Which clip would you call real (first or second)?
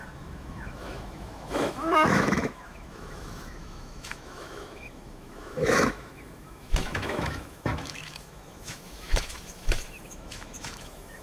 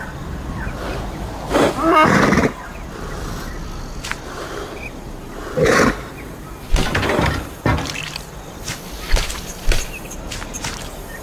second